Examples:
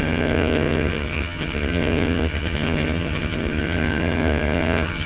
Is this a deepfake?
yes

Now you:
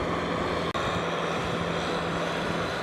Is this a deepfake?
no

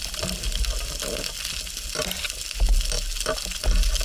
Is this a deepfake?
no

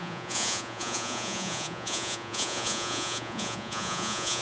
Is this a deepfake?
yes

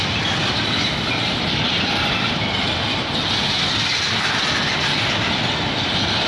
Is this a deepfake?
no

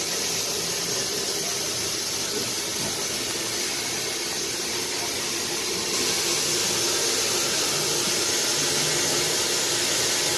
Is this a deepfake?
no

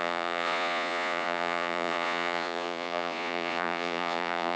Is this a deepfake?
yes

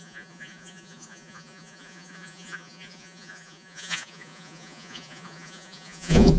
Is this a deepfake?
yes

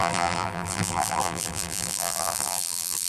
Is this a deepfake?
yes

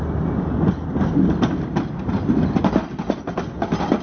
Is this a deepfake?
no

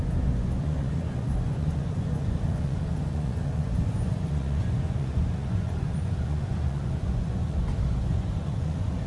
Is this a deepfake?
yes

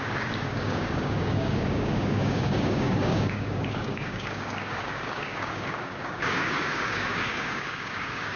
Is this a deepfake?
yes